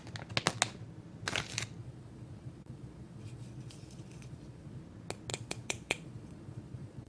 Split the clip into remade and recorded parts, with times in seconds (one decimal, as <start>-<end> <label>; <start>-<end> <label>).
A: 0.0-1.8 recorded; 1.8-4.8 remade; 4.8-5.3 recorded; 5.3-7.1 remade